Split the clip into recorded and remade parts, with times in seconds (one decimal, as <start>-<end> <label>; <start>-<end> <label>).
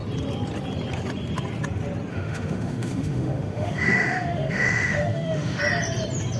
0.0-2.1 recorded; 2.1-5.6 remade; 5.6-6.4 recorded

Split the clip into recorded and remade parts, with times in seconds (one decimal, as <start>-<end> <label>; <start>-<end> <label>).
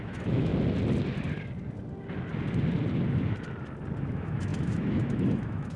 0.0-0.5 remade; 0.5-4.0 recorded; 4.0-5.8 remade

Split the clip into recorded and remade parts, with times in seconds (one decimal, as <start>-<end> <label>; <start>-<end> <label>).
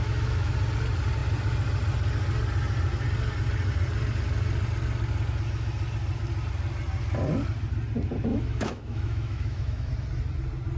0.0-0.5 remade; 0.5-8.3 recorded; 8.3-9.9 remade; 9.9-10.8 recorded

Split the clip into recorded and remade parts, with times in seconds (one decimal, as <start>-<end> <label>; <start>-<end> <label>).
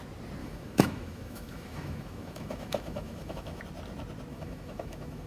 0.0-0.4 recorded; 0.4-3.6 remade; 3.6-4.3 recorded; 4.3-5.3 remade